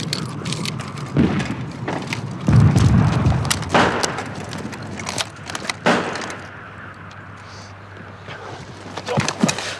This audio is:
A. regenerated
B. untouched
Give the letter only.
B